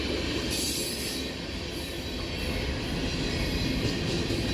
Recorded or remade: recorded